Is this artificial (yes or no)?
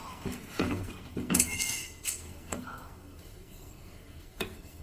yes